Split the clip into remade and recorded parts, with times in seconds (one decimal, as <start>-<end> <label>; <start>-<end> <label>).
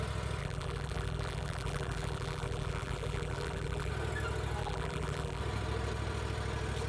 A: 0.0-0.4 recorded; 0.4-3.9 remade; 3.9-4.6 recorded; 4.6-5.4 remade; 5.4-6.9 recorded